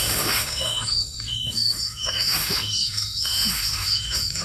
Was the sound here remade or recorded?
remade